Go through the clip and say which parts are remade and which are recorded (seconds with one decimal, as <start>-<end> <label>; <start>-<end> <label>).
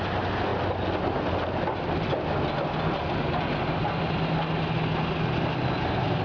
0.0-6.2 recorded